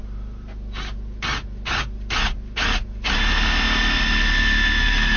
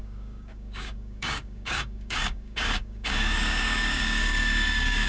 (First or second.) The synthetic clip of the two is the second